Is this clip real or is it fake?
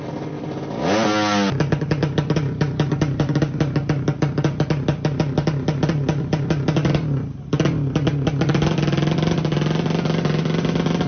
real